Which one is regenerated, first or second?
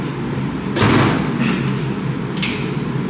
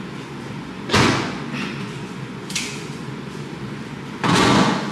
second